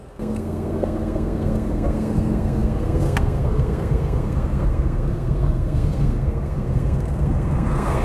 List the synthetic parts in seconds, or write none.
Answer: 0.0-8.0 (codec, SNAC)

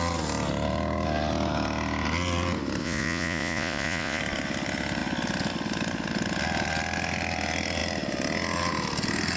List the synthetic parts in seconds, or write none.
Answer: 2.8-4.2 (vocoder, Vocos)

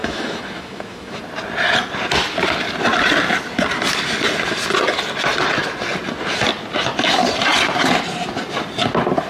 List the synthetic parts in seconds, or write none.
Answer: 0.0-1.2 (autoencoder, DAC-VAE)

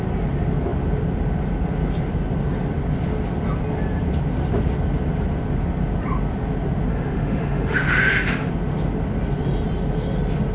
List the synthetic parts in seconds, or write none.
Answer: 6.9-8.5 (autoencoder, DAC-VAE)

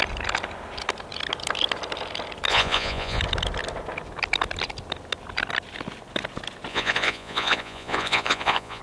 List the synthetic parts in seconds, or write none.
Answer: 2.5-3.2 (vocoder, Vocos); 6.7-8.8

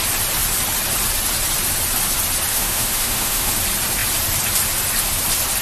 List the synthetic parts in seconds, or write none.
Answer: 2.5-3.5 (autoencoder, DAC-VAE)

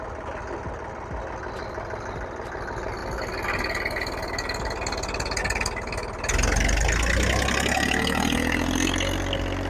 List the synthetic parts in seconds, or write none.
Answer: none